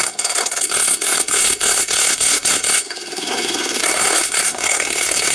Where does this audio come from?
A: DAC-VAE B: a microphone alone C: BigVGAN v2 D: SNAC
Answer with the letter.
D